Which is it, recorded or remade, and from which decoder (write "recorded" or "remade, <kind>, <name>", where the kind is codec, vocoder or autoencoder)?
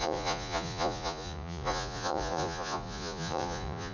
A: remade, vocoder, Vocos